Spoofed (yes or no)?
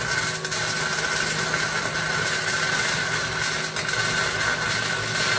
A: no